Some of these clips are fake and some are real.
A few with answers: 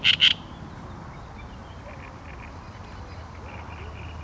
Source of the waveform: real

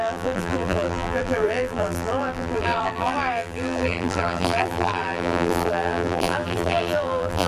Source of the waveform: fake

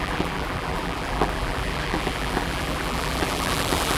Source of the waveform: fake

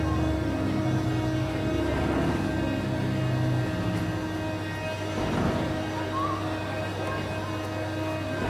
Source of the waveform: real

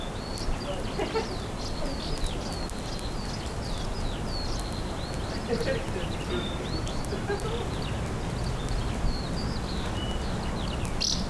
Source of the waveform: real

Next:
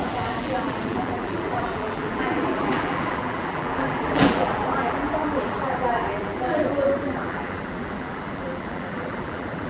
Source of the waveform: fake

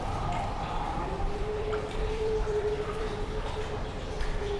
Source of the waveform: fake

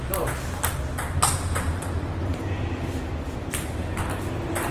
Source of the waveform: real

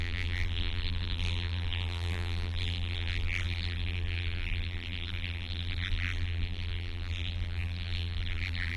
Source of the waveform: fake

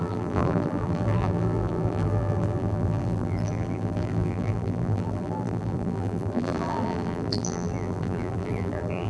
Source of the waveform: fake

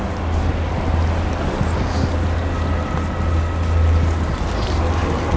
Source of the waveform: real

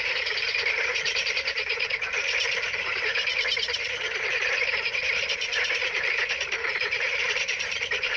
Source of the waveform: fake